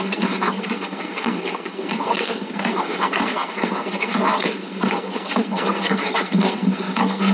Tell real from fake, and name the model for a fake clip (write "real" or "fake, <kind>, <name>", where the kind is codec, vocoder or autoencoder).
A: fake, codec, SNAC